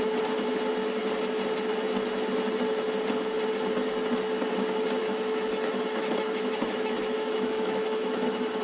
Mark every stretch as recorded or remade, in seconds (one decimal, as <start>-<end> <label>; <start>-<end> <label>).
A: 0.0-5.0 recorded; 5.0-8.6 remade